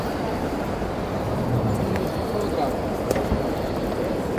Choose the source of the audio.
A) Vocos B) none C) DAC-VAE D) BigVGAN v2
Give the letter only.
D